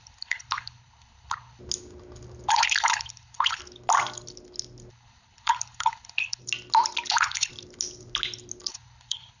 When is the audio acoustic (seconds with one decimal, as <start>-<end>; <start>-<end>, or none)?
1.6-2.5; 3.6-4.9; 6.4-7.1; 7.5-8.7